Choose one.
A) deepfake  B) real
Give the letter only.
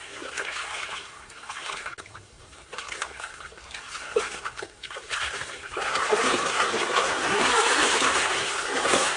A